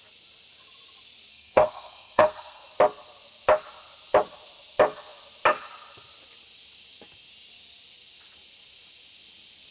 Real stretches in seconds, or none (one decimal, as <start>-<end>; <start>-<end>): 0.0-1.3; 2.7-9.7